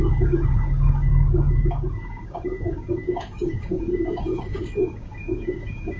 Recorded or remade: remade